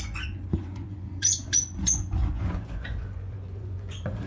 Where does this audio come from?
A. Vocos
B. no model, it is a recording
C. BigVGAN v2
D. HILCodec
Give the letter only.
A